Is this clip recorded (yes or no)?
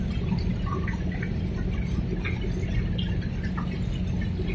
yes